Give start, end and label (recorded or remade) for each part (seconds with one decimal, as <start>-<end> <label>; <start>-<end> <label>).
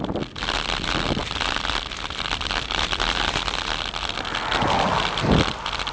0.0-5.9 recorded